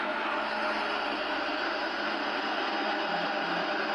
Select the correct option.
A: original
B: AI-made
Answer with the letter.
A